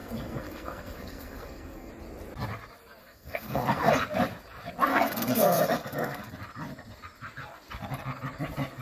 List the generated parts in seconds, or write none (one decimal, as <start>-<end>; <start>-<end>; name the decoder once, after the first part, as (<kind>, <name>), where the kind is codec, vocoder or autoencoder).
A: 0.0-1.9 (codec, SNAC); 3.0-3.9; 4.9-6.3